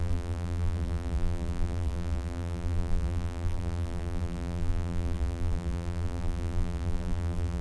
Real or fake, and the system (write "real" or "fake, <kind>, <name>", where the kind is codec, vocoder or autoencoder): fake, vocoder, BigVGAN v2